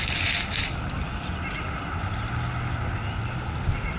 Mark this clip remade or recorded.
recorded